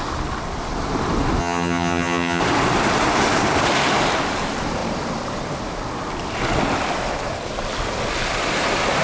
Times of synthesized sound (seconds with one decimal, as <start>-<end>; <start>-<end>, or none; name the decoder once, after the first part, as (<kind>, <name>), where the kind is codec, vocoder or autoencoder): 1.4-2.4 (vocoder, HiFi-GAN)